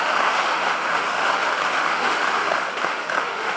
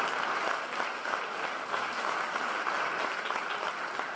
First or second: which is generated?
first